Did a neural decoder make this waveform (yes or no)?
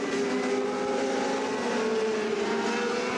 no